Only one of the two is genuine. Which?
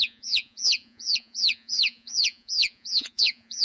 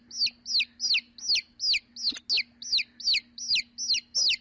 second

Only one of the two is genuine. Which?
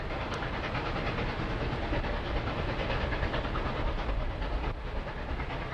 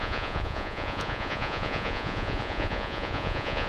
first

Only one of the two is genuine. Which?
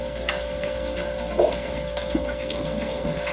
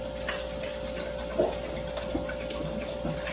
second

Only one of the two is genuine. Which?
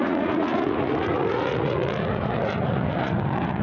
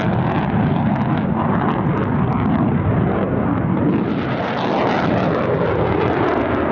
second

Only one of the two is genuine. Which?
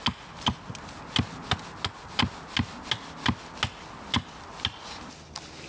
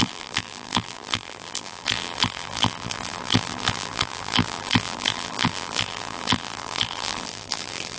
first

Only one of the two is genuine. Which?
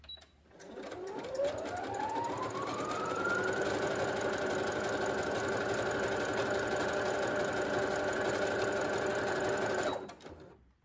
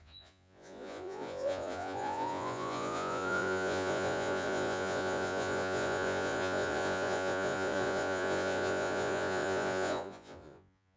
first